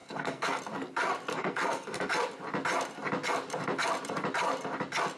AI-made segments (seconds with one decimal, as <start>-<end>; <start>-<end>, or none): 0.0-0.6; 1.3-2.1